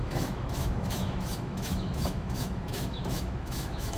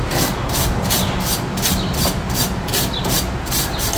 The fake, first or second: first